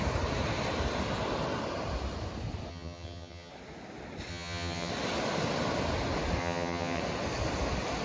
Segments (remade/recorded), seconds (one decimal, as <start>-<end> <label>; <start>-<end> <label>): 0.0-2.7 recorded; 2.7-3.5 remade; 3.5-4.3 recorded; 4.3-4.9 remade; 4.9-6.4 recorded; 6.4-7.0 remade; 7.0-8.0 recorded

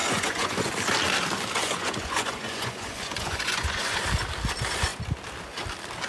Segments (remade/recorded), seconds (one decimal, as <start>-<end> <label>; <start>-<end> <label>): 0.0-0.7 remade; 0.7-1.6 recorded; 1.6-4.0 remade; 4.0-6.1 recorded

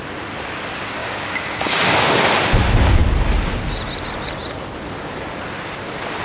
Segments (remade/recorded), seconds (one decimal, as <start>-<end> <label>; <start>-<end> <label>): 0.0-1.0 recorded; 1.0-1.8 remade; 1.8-6.2 recorded